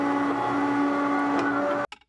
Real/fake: real